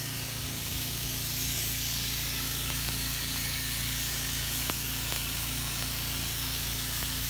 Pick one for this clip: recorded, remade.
remade